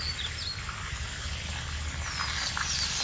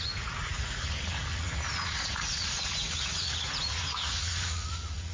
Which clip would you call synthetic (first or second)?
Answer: second